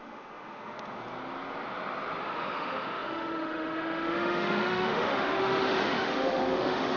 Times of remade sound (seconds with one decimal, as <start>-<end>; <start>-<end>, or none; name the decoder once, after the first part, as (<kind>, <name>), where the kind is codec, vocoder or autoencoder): 0.0-1.0 (autoencoder, DAC-VAE); 2.2-7.0